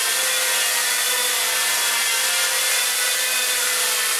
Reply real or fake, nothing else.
real